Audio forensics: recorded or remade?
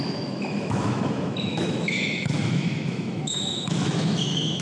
remade